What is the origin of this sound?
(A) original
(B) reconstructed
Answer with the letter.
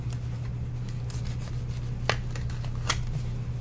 A